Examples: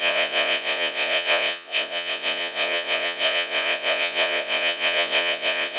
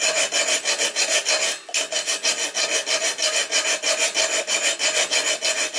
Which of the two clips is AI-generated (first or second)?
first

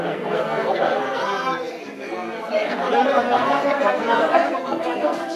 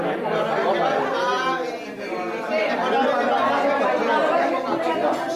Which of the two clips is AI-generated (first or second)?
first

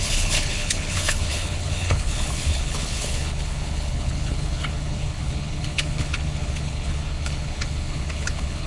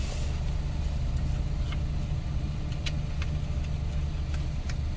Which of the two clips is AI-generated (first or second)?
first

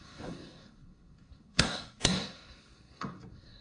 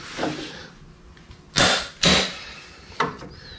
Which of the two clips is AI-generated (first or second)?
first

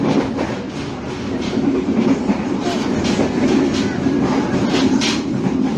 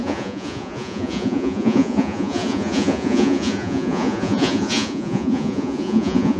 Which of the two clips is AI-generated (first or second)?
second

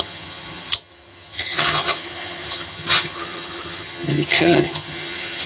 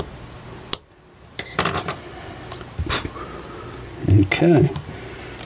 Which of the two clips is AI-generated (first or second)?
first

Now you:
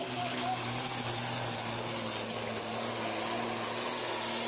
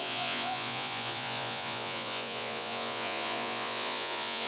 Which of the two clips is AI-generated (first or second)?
second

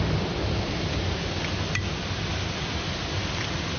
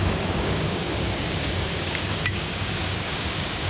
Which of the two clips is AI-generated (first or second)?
second